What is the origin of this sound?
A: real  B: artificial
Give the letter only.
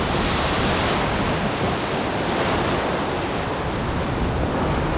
A